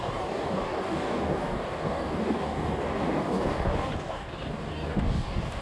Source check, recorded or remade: remade